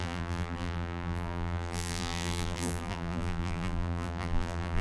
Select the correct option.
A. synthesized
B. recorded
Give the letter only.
A